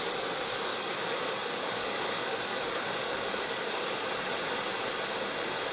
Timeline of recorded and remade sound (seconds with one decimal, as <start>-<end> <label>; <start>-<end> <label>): 0.0-0.7 recorded; 0.7-4.1 remade; 4.1-5.7 recorded

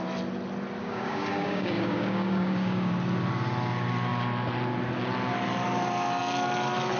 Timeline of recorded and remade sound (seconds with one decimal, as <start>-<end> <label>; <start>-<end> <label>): 0.0-0.8 recorded; 0.8-2.9 remade; 2.9-7.0 recorded